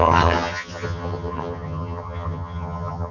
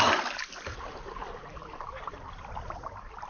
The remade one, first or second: first